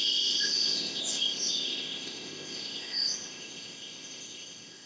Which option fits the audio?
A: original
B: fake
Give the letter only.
B